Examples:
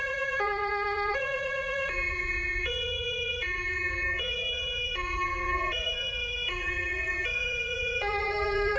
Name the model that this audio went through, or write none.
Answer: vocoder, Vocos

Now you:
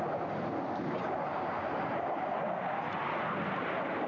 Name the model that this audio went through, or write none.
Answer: none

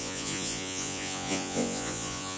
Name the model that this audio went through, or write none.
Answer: vocoder, Vocos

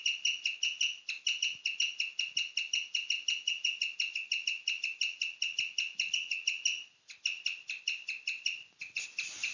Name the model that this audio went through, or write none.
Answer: none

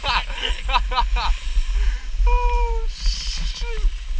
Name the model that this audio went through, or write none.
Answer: none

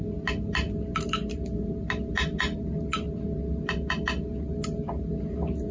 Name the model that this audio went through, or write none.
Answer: none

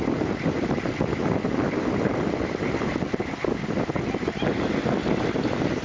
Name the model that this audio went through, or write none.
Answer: none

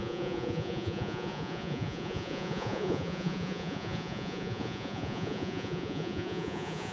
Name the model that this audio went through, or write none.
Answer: vocoder, Vocos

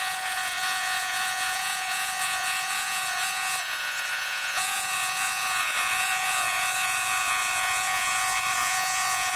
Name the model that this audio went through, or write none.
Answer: vocoder, Vocos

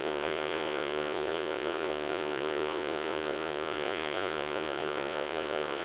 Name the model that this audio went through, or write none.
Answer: vocoder, Vocos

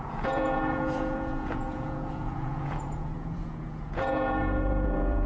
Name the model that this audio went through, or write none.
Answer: vocoder, Vocos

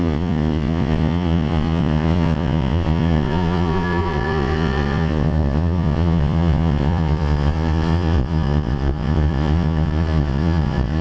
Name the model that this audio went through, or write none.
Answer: vocoder, Vocos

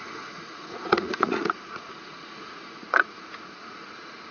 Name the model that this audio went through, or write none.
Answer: vocoder, Vocos